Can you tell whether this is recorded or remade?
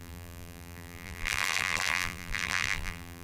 remade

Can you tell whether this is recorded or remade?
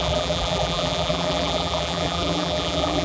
remade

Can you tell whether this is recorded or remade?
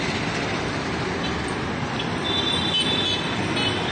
recorded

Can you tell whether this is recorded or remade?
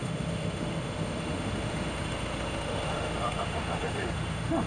remade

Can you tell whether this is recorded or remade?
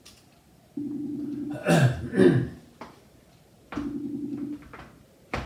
recorded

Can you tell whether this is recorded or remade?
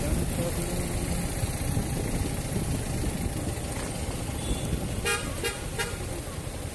recorded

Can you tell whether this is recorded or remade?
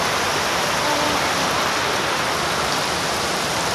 recorded